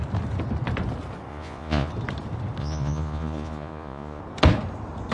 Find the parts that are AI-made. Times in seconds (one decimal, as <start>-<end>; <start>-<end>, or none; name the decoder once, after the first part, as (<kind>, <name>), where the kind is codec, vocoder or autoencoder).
1.3-1.9 (vocoder, Vocos); 2.6-4.2